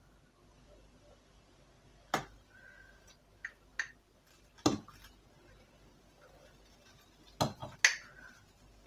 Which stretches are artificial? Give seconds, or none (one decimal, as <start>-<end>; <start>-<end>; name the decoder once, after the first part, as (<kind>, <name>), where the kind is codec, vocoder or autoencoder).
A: none